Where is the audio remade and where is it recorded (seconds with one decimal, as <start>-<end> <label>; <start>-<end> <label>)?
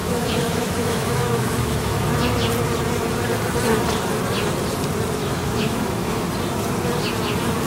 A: 0.0-2.1 remade; 2.1-5.2 recorded; 5.2-6.2 remade; 6.2-7.7 recorded